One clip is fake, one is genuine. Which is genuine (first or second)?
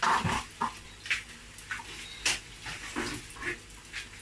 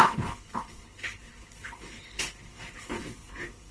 first